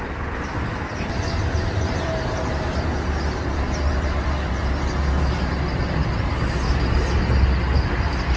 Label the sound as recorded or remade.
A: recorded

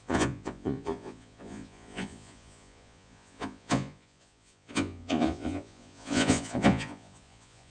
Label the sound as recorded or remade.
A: remade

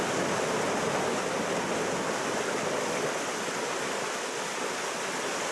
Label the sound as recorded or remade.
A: recorded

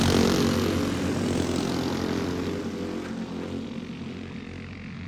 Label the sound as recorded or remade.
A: recorded